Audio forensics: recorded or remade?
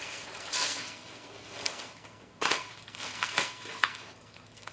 remade